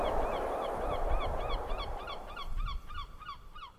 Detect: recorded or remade remade